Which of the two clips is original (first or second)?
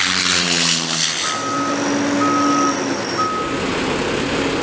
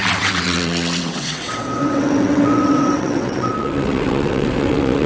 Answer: first